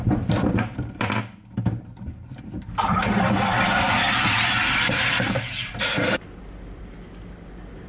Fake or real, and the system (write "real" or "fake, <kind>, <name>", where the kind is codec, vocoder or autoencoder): fake, vocoder, BigVGAN v2